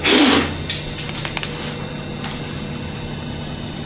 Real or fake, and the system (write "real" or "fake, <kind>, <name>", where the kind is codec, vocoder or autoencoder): real